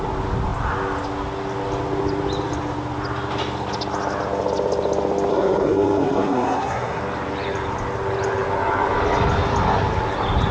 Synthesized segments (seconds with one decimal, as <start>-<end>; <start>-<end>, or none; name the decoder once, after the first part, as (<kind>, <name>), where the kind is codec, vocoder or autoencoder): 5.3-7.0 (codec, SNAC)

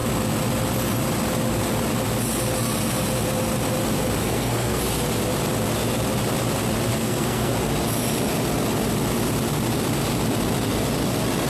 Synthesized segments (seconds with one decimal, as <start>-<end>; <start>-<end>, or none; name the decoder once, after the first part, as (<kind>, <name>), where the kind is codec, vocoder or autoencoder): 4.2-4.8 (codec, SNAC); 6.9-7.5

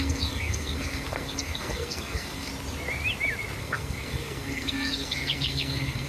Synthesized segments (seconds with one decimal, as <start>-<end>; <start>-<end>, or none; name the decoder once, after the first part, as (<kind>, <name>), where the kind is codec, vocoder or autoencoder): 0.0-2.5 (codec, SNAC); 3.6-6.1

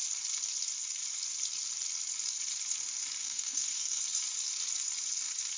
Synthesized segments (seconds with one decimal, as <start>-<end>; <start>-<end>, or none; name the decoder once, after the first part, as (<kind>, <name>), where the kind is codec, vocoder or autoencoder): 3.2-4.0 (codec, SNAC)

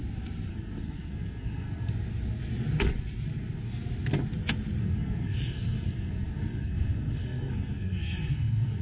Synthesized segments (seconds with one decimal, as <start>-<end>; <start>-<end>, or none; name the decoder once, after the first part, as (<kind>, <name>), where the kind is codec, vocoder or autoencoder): 0.5-1.9 (codec, SNAC); 4.8-8.8

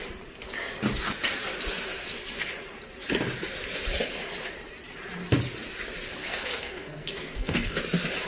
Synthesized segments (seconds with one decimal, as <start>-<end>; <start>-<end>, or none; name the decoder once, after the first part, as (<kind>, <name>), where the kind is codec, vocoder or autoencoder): 6.2-7.8 (codec, SNAC)